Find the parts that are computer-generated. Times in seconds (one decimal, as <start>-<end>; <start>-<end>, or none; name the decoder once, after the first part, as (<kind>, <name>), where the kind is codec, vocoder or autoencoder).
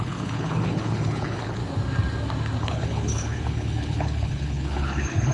0.0-1.6 (codec, HILCodec); 2.6-5.3